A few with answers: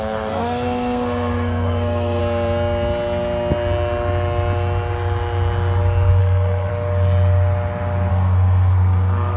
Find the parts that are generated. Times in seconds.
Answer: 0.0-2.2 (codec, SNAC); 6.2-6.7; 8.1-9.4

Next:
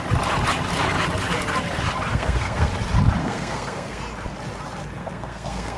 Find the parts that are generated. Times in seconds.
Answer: 2.1-2.7 (codec, SNAC); 3.2-4.0; 5.0-5.8

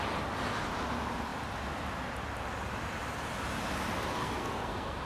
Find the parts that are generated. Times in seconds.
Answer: 4.2-5.0 (codec, SNAC)

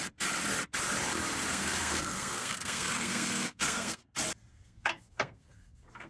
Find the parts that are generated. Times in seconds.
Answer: 1.5-4.0 (codec, SNAC); 4.5-6.1

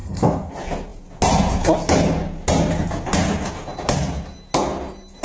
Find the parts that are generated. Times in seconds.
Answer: 0.0-0.5 (codec, SNAC)

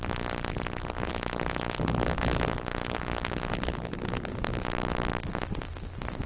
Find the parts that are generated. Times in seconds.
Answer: 1.8-2.5 (codec, SNAC); 3.5-4.6